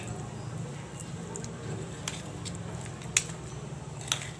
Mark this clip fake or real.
real